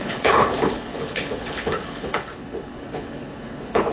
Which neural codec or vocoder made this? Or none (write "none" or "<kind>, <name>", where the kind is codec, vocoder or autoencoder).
codec, HILCodec